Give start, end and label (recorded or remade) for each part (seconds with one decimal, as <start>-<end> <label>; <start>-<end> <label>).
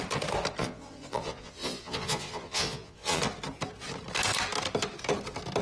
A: 0.0-0.6 recorded; 0.6-3.2 remade; 3.2-5.6 recorded